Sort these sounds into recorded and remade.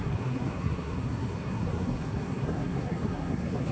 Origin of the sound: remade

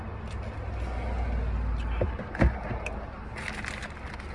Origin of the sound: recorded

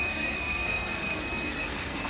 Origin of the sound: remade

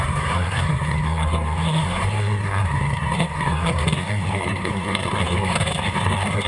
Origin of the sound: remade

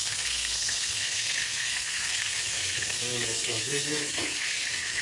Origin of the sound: remade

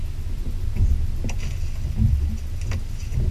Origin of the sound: recorded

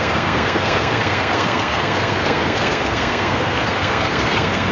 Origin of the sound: remade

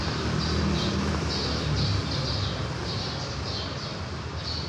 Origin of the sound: recorded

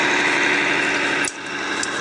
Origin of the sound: recorded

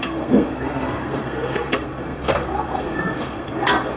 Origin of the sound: remade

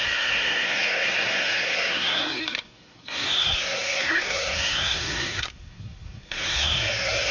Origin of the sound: remade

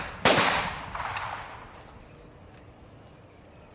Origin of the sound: recorded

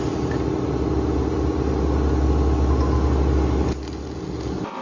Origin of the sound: recorded